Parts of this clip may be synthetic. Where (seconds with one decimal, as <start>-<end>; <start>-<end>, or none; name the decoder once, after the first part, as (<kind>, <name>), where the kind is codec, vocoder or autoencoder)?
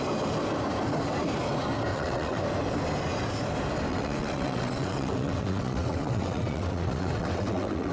1.9-2.4 (vocoder, WaveNeXt); 3.9-7.9